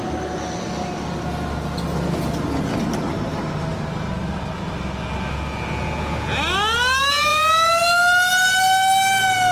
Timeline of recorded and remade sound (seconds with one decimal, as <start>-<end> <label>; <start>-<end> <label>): 0.0-9.5 recorded